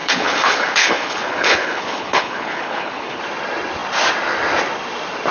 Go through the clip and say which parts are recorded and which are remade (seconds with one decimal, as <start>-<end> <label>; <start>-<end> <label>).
0.0-3.2 remade; 3.2-5.3 recorded